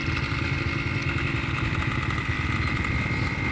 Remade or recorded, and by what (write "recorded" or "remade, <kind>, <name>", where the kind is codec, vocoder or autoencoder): recorded